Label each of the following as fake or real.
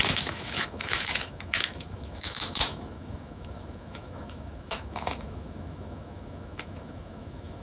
fake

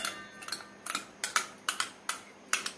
real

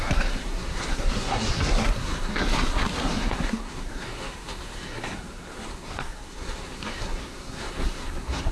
fake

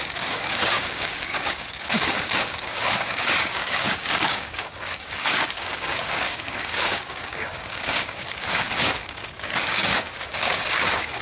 fake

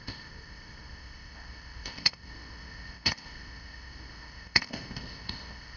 fake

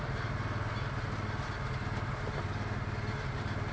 fake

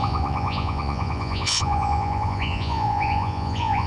fake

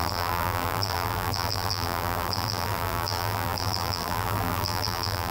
fake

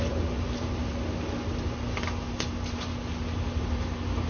real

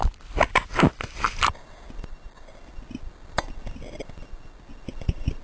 fake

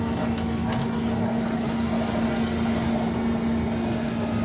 real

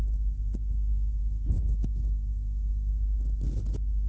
real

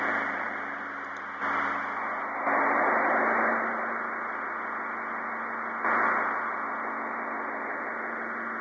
real